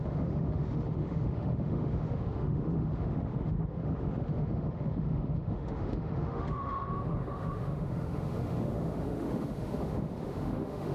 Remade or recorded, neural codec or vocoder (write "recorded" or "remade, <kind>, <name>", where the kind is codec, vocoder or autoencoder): remade, autoencoder, DAC-VAE